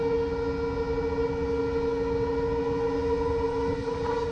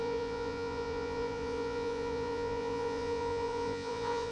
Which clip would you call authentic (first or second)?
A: first